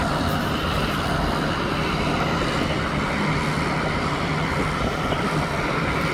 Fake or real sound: fake